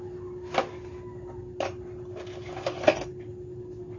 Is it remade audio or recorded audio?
recorded